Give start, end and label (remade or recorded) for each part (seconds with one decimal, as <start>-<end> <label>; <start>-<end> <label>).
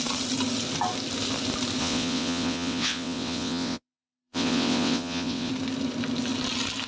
0.0-1.8 recorded; 1.8-5.5 remade; 5.5-6.9 recorded